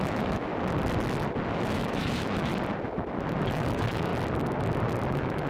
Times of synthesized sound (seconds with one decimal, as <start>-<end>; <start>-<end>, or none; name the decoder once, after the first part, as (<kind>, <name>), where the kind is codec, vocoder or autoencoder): 0.0-0.5 (autoencoder, DAC-VAE); 1.5-2.5; 3.5-4.1; 5.1-5.5